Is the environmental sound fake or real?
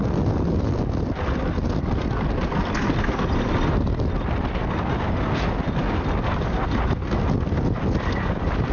real